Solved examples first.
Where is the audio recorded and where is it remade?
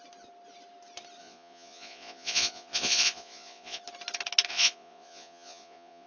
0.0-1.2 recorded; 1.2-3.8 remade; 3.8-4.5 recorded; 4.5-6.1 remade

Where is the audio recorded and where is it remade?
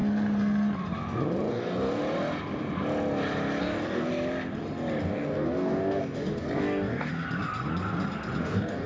0.0-1.5 recorded; 1.5-2.0 remade; 2.0-3.6 recorded; 3.6-4.1 remade; 4.1-5.0 recorded; 5.0-7.1 remade; 7.1-8.4 recorded; 8.4-8.9 remade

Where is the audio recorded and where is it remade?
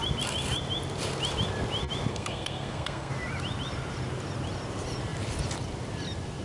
0.0-2.1 recorded; 2.1-3.1 remade; 3.1-6.4 recorded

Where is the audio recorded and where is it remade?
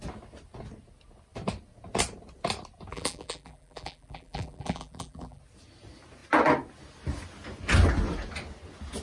0.0-2.9 recorded; 2.9-5.4 remade; 5.4-9.0 recorded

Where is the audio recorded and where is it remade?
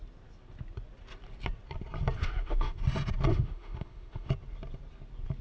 0.0-2.2 recorded; 2.2-2.8 remade; 2.8-3.3 recorded; 3.3-4.3 remade; 4.3-5.4 recorded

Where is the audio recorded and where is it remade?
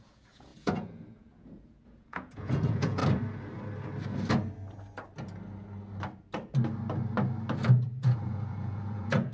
0.0-3.0 remade; 3.0-7.8 recorded; 7.8-9.3 remade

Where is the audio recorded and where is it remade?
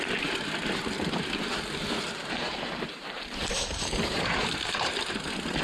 0.0-5.6 remade